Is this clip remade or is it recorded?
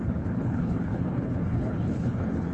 remade